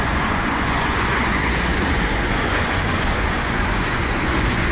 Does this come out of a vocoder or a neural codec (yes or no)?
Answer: yes